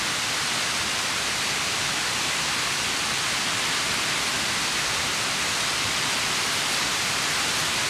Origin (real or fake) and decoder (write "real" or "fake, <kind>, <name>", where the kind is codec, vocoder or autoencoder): real